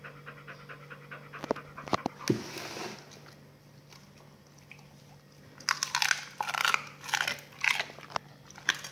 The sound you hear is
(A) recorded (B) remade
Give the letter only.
A